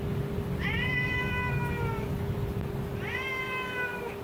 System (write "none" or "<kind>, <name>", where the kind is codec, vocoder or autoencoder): none